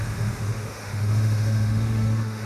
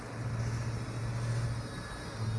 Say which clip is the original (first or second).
second